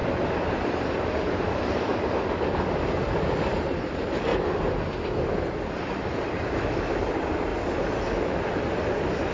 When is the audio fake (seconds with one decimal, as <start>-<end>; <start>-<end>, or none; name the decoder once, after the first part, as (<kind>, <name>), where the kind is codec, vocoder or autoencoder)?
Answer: 0.0-1.9 (vocoder, BigVGAN v2); 3.0-4.3; 5.3-7.5; 8.5-9.3